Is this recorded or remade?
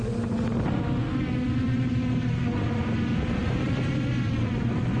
recorded